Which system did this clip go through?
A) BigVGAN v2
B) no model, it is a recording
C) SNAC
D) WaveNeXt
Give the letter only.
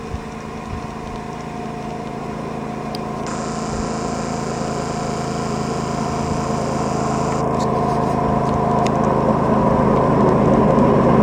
B